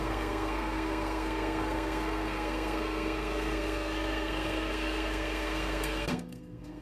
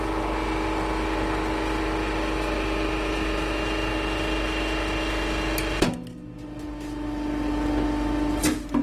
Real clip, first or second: second